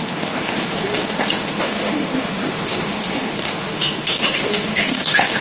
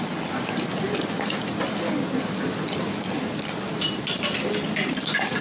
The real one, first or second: second